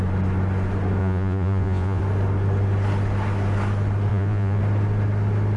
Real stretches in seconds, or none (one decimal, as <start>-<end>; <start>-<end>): 0.0-1.0; 2.0-4.1; 4.6-5.6